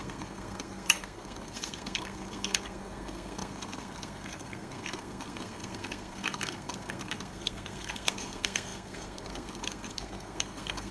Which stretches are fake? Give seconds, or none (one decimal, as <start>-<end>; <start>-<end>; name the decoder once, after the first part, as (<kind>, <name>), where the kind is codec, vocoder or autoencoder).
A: 0.0-10.9 (codec, SNAC)